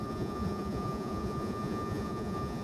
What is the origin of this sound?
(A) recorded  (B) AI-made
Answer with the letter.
B